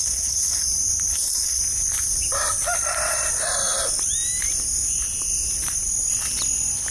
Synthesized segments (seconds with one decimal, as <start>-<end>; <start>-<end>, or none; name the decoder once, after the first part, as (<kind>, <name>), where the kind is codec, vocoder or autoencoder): 0.0-0.6 (codec, HILCodec); 1.1-1.6